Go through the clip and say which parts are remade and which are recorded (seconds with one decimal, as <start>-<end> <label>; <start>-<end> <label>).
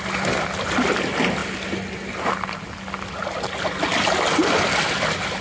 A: 0.0-5.4 recorded